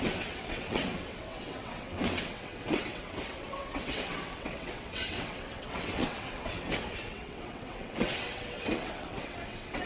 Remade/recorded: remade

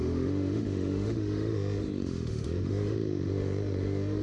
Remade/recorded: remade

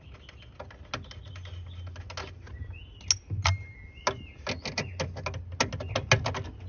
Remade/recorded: recorded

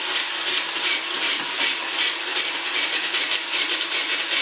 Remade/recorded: recorded